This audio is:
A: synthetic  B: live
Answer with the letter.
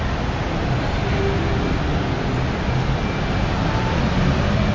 B